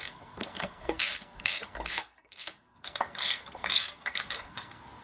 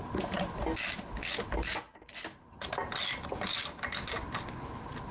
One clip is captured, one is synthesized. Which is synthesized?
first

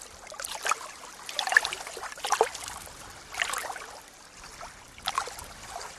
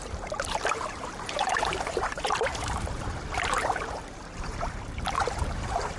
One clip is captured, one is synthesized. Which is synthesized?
second